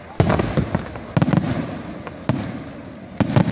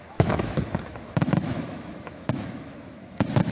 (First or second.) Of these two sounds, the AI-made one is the second